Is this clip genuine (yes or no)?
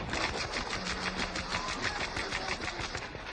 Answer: yes